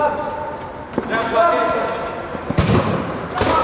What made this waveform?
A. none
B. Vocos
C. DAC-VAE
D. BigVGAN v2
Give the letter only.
A